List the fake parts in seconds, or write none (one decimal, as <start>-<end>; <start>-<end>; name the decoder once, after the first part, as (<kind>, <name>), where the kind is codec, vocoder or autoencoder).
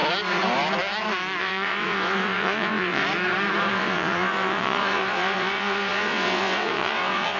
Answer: 1.4-3.0 (vocoder, WaveNeXt); 3.7-7.4